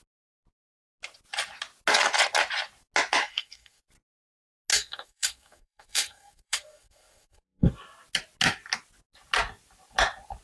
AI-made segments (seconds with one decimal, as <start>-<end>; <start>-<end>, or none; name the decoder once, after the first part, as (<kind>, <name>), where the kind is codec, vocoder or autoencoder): 3.2-3.8 (codec, SNAC); 4.7-7.7